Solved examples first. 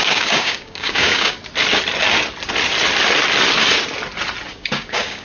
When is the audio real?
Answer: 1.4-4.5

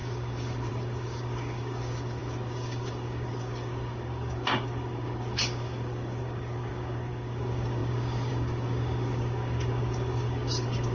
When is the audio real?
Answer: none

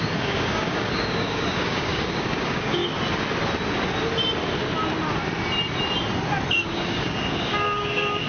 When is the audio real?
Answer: 2.8-6.5